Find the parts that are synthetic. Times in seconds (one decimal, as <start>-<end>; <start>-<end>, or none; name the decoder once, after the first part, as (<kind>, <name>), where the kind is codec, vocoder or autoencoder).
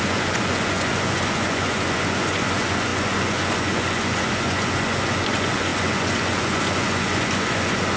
0.0-8.0 (vocoder, Vocos)